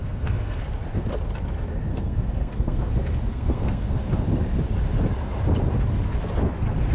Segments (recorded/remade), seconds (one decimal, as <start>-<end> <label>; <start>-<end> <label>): 0.0-0.6 remade; 0.6-1.9 recorded; 1.9-2.9 remade; 2.9-3.3 recorded; 3.3-4.0 remade; 4.0-6.9 recorded